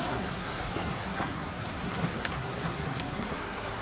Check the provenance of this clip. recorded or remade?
remade